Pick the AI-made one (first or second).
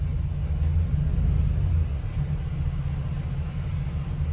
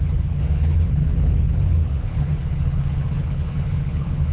second